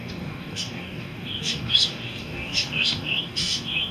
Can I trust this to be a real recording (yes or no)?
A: no